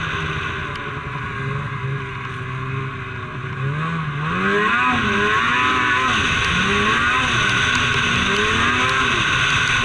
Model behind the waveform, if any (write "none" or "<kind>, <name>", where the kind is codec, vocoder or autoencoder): none